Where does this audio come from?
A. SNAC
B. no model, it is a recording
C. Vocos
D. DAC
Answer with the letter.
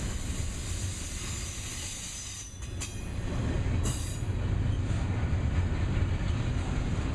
B